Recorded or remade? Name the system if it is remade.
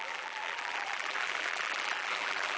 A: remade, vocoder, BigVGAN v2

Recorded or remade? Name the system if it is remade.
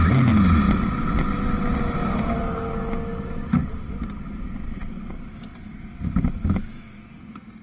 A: recorded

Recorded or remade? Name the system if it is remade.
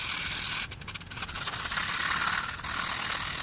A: recorded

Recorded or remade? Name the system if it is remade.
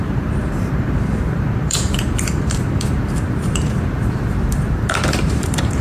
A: remade, vocoder, BigVGAN v2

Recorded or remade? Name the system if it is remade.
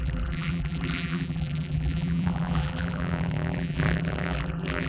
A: remade, vocoder, BigVGAN v2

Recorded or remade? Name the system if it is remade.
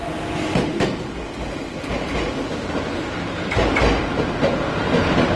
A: recorded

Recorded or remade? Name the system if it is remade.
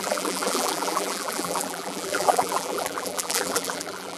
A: remade, vocoder, BigVGAN v2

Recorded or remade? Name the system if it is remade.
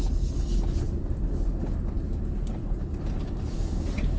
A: recorded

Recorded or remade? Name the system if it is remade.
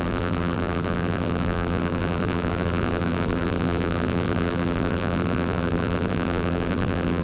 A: remade, vocoder, BigVGAN v2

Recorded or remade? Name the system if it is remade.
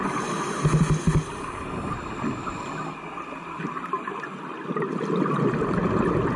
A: recorded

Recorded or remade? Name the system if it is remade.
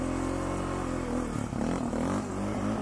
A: recorded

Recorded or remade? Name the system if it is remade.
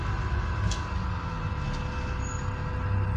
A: recorded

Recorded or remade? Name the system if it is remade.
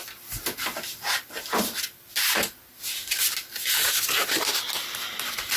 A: recorded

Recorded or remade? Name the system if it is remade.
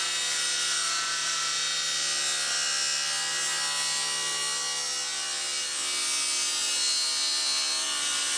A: recorded